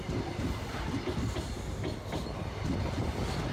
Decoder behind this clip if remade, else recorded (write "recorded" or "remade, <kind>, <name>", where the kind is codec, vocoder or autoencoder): recorded